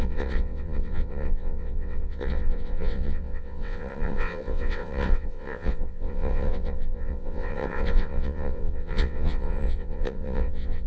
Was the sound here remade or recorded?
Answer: remade